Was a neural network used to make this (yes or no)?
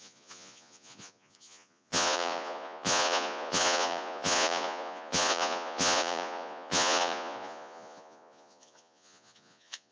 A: yes